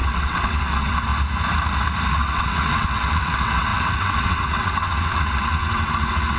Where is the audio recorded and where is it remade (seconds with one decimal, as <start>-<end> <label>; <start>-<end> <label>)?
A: 0.0-1.1 remade; 1.1-2.1 recorded; 2.1-6.4 remade